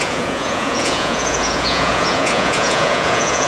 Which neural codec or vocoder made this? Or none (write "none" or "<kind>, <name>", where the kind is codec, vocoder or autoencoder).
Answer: vocoder, Vocos